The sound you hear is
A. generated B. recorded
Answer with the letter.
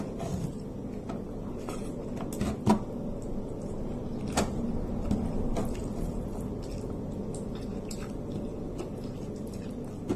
B